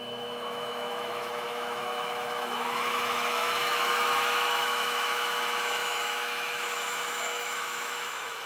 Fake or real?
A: fake